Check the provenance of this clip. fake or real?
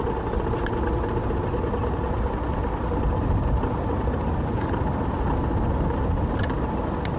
real